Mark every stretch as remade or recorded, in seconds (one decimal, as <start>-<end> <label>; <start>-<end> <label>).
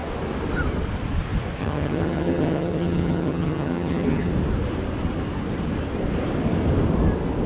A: 0.0-1.6 recorded; 1.6-4.3 remade; 4.3-7.5 recorded